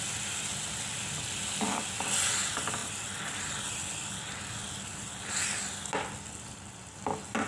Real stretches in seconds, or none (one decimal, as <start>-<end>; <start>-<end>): 0.0-7.5